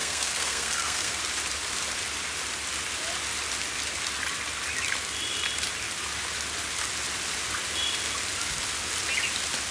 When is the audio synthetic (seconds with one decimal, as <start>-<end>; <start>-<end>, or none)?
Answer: 0.0-1.2